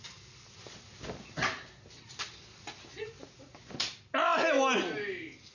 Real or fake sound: real